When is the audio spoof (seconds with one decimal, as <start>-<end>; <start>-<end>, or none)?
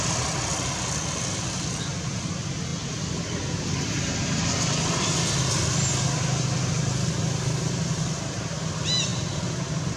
none